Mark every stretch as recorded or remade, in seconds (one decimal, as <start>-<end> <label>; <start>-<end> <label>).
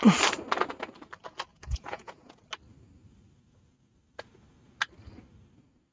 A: 0.0-1.5 recorded; 1.5-2.4 remade; 2.4-5.9 recorded